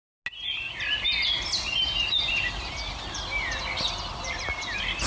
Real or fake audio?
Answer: real